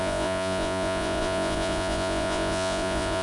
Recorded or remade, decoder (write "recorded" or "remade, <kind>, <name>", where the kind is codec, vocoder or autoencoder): remade, vocoder, Vocos